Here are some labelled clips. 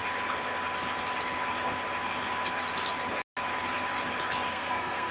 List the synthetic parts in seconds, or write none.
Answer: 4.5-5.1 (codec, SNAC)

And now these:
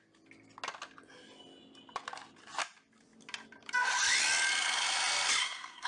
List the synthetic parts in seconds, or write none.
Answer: 5.4-5.9 (codec, SNAC)